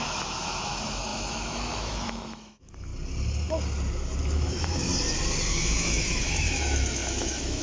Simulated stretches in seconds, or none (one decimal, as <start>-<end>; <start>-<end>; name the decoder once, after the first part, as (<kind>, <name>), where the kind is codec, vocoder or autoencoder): 0.0-2.9 (autoencoder, DAC-VAE); 4.2-4.9; 5.5-7.6

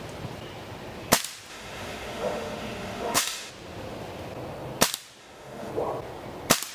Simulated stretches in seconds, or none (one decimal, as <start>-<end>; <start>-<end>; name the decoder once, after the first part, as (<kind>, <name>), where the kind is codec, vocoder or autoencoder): 1.5-3.5 (autoencoder, DAC-VAE); 5.2-5.7

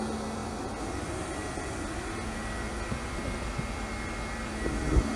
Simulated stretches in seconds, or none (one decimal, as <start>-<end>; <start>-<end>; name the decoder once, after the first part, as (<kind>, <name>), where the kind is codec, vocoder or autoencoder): none

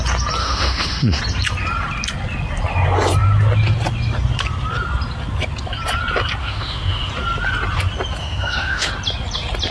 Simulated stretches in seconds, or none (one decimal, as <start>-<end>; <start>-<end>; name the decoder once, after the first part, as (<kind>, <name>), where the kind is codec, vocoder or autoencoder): 0.4-1.2 (autoencoder, DAC-VAE); 6.4-7.1; 8.2-8.9

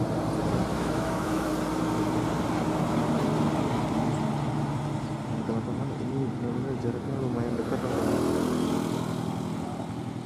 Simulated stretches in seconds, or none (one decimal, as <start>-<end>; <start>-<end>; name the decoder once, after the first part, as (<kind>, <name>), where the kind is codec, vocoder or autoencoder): 0.7-1.5 (autoencoder, DAC-VAE)

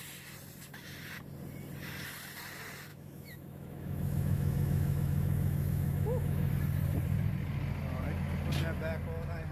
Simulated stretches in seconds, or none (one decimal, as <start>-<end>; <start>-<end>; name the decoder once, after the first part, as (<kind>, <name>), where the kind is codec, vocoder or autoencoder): 2.9-6.5 (autoencoder, DAC-VAE)

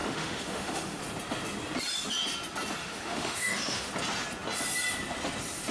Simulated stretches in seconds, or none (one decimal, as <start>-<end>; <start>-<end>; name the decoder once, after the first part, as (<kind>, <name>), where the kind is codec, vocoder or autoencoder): 0.0-1.0 (autoencoder, DAC-VAE); 2.8-3.9